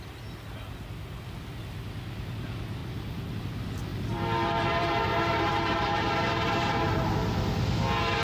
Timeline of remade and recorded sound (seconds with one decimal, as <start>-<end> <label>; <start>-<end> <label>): 0.0-2.8 recorded; 2.8-3.4 remade; 3.4-3.9 recorded; 3.9-7.1 remade; 7.1-8.2 recorded